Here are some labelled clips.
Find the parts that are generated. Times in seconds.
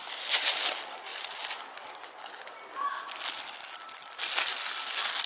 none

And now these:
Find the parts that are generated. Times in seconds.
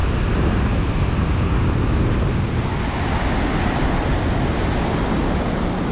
none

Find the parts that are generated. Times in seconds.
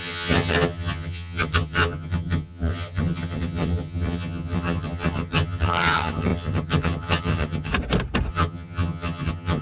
0.0-7.7 (vocoder, HiFi-GAN); 8.3-9.6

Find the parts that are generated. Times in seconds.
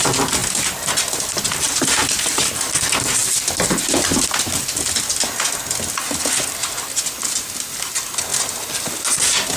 none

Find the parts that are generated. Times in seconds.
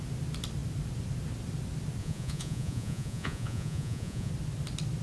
2.0-4.3 (vocoder, Vocos)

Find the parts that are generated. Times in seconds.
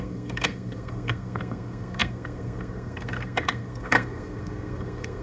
0.0-5.2 (codec, SNAC)